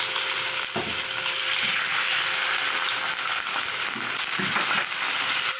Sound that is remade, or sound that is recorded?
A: recorded